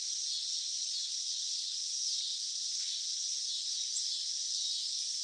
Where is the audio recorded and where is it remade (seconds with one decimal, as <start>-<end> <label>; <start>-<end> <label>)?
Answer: 0.0-1.0 recorded; 1.0-1.9 remade; 1.9-2.3 recorded; 2.3-2.9 remade; 2.9-5.2 recorded